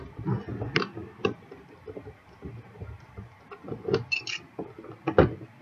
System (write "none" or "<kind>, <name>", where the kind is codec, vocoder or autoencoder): none